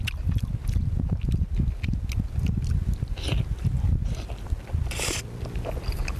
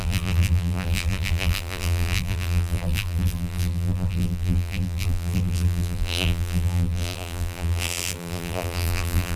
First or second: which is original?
first